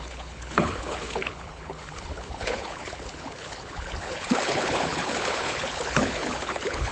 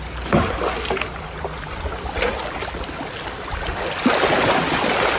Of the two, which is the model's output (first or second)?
first